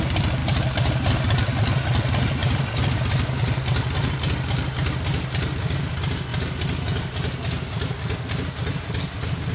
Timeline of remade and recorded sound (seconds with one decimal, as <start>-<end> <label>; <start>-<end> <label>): 0.0-9.5 recorded